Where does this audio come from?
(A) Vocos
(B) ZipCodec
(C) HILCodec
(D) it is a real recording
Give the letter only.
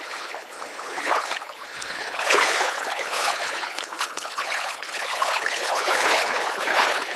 C